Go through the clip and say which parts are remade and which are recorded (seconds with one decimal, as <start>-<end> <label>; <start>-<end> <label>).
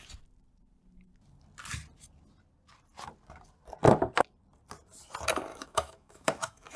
0.0-5.5 recorded; 5.5-6.8 remade